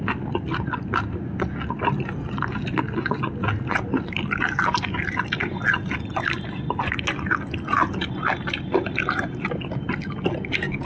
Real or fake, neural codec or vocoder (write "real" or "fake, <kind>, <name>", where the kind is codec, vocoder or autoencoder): real